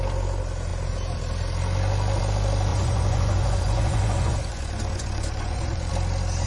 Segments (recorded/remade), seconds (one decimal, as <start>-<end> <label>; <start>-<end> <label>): 0.0-2.7 recorded; 2.7-5.9 remade; 5.9-6.5 recorded